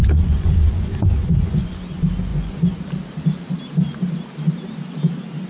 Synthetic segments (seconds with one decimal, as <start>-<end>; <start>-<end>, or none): 0.0-1.8; 2.3-2.8